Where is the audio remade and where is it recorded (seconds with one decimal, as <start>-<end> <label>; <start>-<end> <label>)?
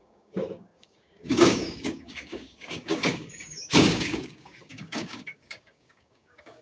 0.0-6.6 remade